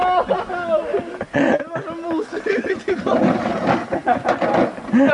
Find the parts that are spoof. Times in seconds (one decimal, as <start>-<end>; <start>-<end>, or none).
none